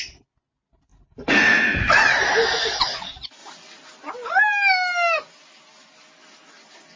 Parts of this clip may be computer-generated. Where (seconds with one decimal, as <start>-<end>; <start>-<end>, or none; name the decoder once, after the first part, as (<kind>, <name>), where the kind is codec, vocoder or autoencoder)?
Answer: 0.9-2.0 (vocoder, Vocos)